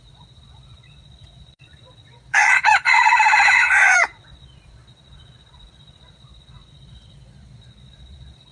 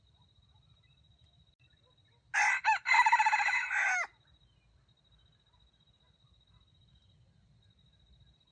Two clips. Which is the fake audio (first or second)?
first